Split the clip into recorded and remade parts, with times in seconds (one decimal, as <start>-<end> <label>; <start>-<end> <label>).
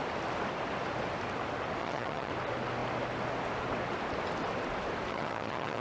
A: 0.0-1.8 recorded; 1.8-2.3 remade; 2.3-5.1 recorded; 5.1-5.8 remade